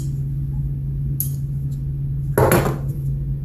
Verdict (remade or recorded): recorded